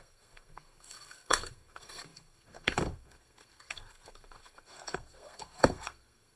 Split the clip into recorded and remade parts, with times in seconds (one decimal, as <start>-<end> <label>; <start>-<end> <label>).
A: 0.0-6.4 remade